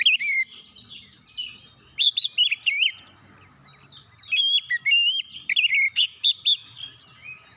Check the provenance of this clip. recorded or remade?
recorded